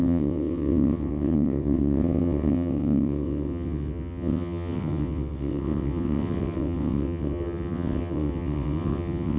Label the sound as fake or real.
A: fake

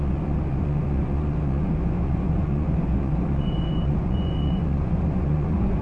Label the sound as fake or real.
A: fake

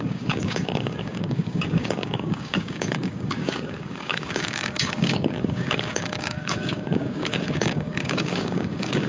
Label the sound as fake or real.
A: fake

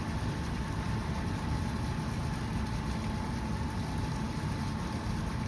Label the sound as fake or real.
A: real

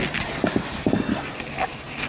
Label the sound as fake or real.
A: real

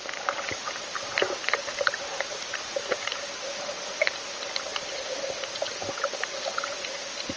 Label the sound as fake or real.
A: real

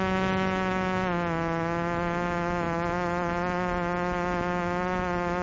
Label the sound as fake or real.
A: fake